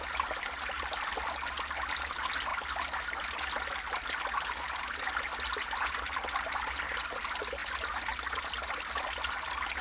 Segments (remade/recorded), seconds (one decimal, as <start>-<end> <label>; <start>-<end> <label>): 0.0-9.8 recorded